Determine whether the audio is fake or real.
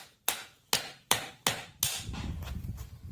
fake